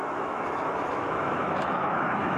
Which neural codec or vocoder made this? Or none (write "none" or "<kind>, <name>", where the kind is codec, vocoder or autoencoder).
autoencoder, DAC-VAE